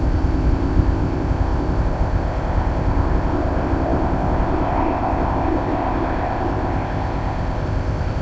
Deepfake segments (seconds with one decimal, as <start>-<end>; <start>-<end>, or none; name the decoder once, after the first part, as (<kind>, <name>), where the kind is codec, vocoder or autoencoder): 0.0-8.2 (codec, ZipCodec)